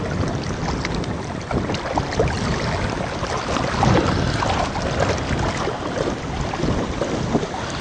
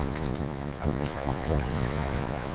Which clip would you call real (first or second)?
first